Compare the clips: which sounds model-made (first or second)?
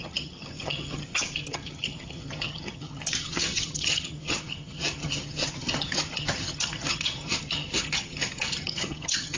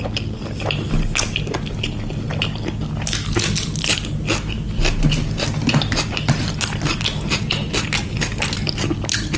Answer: first